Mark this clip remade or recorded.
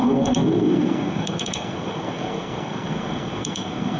remade